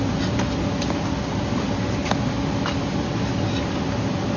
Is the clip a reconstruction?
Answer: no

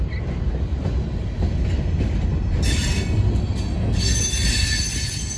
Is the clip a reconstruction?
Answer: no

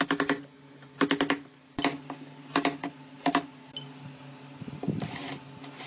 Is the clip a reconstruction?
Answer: no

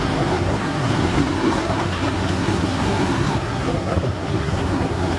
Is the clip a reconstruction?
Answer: yes